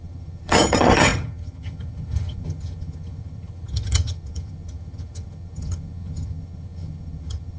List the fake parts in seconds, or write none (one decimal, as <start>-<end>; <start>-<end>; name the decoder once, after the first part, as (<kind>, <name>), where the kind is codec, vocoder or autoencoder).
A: 0.0-7.6 (vocoder, HiFi-GAN)